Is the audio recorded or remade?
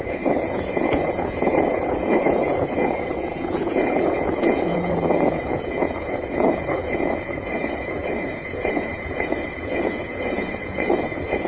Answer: remade